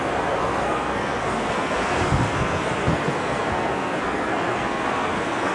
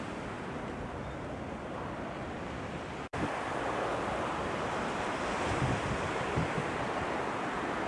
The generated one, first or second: first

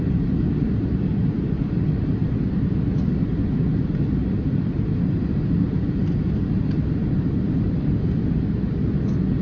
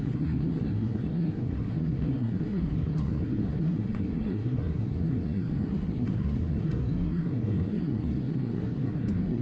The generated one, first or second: second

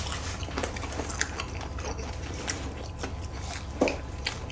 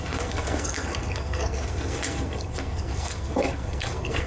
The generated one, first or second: second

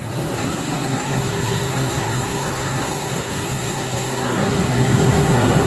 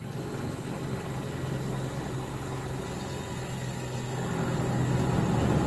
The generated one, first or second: first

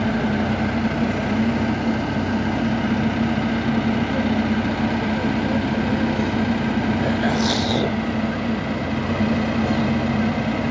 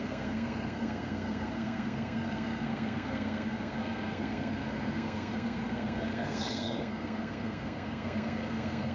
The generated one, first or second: second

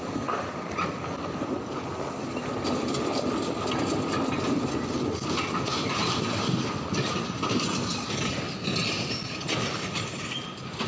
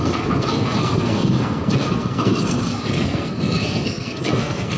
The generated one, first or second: second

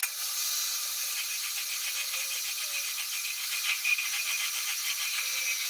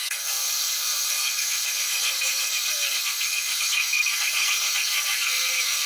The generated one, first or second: second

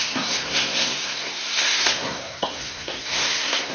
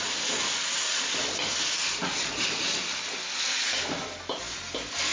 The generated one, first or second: first